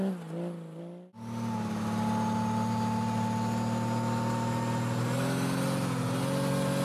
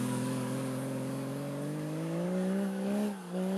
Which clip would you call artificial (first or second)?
second